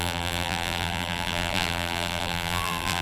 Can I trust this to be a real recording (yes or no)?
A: no